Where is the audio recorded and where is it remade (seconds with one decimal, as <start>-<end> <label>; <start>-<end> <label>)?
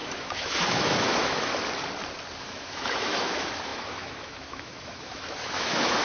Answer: 0.0-1.5 remade; 1.5-2.4 recorded; 2.4-6.0 remade